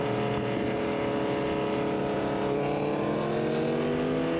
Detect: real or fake real